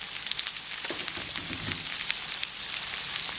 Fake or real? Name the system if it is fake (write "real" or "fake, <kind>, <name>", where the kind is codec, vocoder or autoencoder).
real